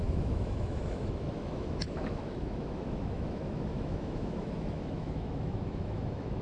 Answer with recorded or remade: remade